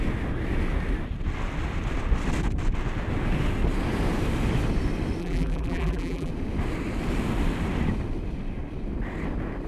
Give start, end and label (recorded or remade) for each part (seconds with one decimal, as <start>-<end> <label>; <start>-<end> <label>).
0.0-5.2 recorded; 5.2-6.3 remade; 6.3-9.7 recorded